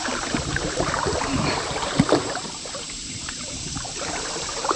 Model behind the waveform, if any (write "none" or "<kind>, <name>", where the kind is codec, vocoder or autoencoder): vocoder, BigVGAN v2